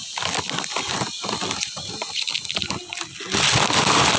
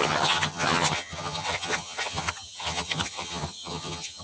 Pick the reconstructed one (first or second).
second